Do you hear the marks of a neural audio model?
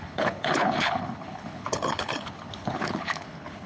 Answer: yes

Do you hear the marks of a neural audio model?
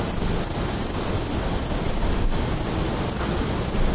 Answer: no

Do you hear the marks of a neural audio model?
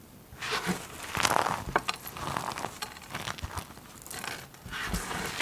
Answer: no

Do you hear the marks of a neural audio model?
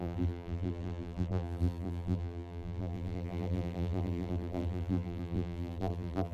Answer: yes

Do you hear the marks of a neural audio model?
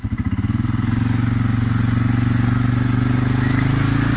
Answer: no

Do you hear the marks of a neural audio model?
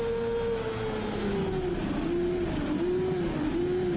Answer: no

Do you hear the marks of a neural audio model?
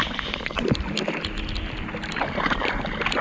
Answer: no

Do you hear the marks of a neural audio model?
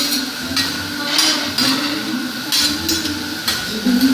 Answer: no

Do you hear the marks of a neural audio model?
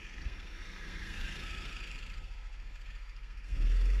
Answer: yes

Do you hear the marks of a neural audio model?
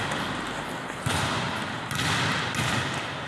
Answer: no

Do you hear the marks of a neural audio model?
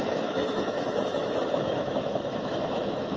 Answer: yes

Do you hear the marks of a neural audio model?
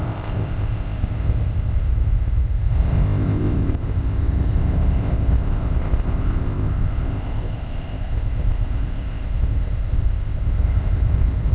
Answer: yes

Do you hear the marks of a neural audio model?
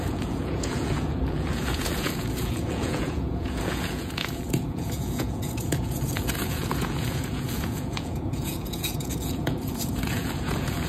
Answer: yes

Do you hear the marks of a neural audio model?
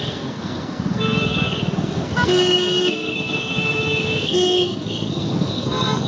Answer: yes